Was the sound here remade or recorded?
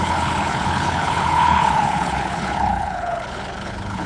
remade